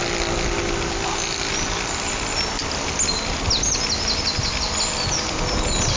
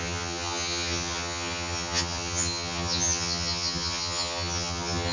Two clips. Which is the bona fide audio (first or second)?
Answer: first